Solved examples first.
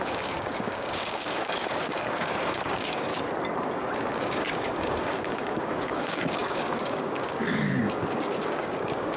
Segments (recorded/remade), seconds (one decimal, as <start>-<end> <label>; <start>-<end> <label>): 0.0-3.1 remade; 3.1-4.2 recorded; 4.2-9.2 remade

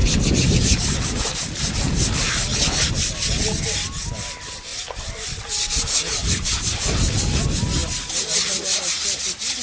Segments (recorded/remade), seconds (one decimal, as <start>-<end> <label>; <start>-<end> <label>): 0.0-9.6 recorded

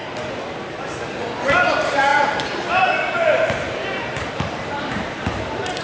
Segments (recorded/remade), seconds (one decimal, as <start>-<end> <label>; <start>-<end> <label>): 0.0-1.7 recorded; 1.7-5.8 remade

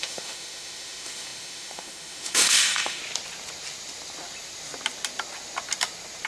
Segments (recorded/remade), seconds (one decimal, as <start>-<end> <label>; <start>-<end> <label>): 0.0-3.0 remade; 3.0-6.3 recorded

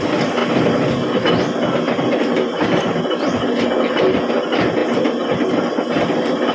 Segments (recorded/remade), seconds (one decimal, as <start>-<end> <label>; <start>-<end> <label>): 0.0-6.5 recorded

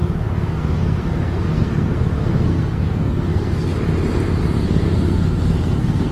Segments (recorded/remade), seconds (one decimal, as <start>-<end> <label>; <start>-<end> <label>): 0.0-3.7 remade; 3.7-4.6 recorded; 4.6-6.1 remade

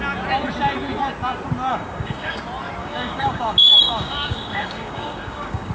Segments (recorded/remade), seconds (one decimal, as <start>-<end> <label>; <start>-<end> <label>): 0.0-1.7 recorded; 1.7-2.4 remade; 2.4-2.8 recorded; 2.8-5.7 remade

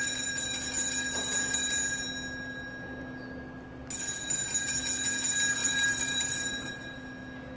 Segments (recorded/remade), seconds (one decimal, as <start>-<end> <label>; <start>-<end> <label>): 0.0-5.6 recorded; 5.6-6.7 remade; 6.7-7.6 recorded